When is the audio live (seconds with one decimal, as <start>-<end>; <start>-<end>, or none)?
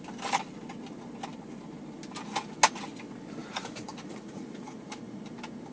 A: 0.0-3.4; 5.2-5.7